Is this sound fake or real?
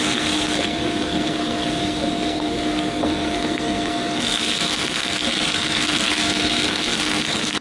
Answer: fake